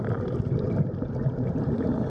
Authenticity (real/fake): real